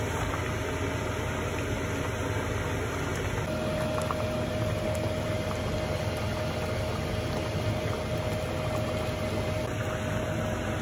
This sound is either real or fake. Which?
real